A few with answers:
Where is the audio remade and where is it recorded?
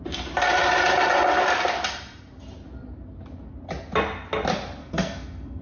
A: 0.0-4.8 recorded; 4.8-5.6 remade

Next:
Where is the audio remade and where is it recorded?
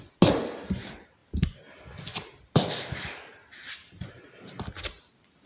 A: 0.0-5.5 recorded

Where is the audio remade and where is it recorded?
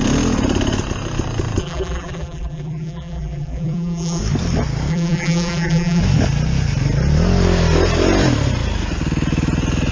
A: 0.0-1.6 recorded; 1.6-4.2 remade; 4.2-4.9 recorded; 4.9-6.0 remade; 6.0-9.9 recorded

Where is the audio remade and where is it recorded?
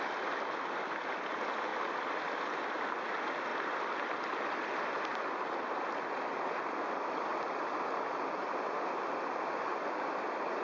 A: 0.0-10.6 recorded